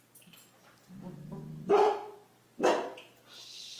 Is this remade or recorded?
recorded